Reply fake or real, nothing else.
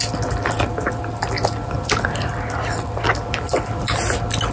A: real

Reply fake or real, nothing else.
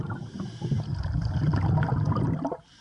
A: real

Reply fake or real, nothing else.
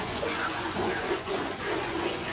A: fake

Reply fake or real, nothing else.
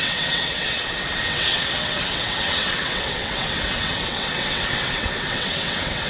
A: fake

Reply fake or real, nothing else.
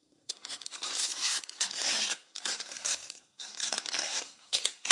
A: fake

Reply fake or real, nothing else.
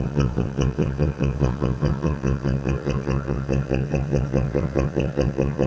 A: fake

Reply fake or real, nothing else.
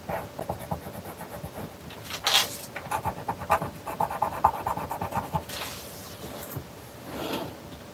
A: real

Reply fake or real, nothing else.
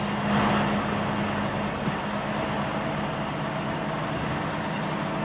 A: real